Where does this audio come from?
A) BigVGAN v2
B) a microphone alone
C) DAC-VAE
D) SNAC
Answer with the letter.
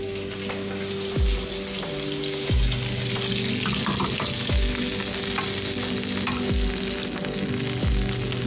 B